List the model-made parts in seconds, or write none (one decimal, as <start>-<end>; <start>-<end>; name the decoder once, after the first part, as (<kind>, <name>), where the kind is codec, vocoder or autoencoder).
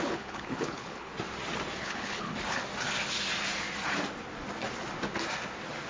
0.0-1.1 (codec, HILCodec); 1.8-2.3